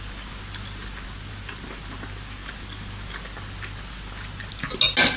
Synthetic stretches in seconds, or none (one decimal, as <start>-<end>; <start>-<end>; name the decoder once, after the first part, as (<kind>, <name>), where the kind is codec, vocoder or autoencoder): none